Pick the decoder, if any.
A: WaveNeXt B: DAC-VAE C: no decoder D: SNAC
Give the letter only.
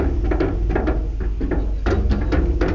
C